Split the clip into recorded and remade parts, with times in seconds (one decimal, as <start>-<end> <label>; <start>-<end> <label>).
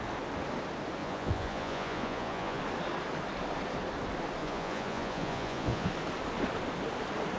0.0-1.0 recorded; 1.0-2.6 remade; 2.6-4.4 recorded; 4.4-5.9 remade; 5.9-7.4 recorded